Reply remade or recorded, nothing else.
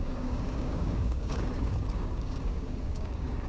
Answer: remade